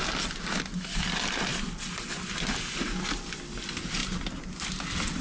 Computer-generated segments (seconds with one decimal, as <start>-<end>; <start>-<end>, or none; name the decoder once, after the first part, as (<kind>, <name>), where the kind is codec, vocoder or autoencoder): none